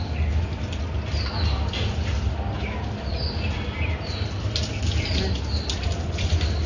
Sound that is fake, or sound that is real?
real